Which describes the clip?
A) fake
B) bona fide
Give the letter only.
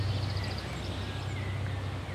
B